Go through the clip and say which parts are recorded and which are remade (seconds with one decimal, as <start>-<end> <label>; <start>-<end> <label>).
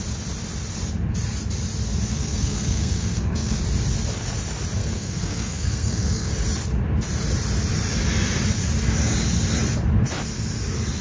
0.0-2.1 recorded; 2.1-3.6 remade; 3.6-4.8 recorded; 4.8-6.3 remade; 6.3-11.0 recorded